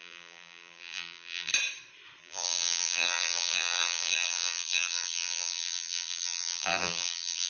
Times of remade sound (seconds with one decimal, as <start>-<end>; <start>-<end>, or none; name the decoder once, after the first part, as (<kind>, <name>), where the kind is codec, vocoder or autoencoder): 0.0-1.5 (vocoder, BigVGAN v2); 2.2-7.5